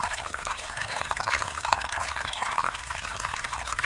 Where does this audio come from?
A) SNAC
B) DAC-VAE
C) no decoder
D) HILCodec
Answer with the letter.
A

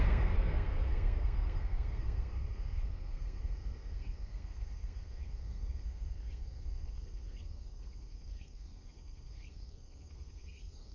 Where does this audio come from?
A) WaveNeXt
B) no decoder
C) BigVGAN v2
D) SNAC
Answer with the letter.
D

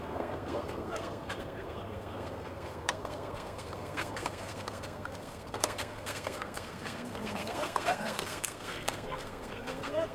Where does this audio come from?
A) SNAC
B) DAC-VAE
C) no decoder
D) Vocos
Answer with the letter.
A